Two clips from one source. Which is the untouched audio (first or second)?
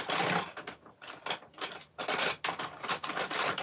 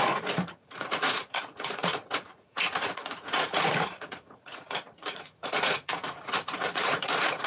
first